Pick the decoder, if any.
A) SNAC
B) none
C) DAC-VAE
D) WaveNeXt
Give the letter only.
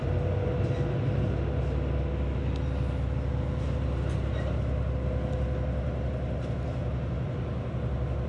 B